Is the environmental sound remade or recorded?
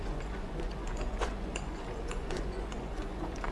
remade